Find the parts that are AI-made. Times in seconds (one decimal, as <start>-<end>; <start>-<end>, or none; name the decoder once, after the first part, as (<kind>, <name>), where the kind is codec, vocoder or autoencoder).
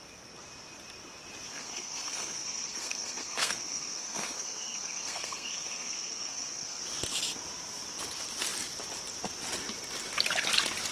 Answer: 1.5-6.8 (codec, SNAC)